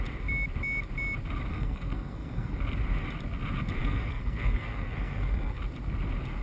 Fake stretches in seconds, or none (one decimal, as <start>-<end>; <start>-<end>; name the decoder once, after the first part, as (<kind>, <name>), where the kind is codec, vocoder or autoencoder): 1.5-2.6 (codec, SNAC); 3.8-5.6